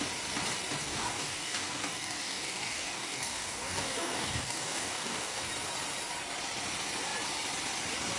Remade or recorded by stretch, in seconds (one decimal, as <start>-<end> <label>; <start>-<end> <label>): 0.0-0.8 recorded; 0.8-5.5 remade; 5.5-8.2 recorded